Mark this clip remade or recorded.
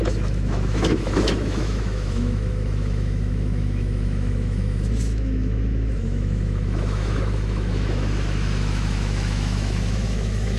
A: remade